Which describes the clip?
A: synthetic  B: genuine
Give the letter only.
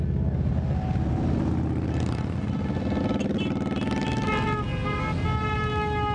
B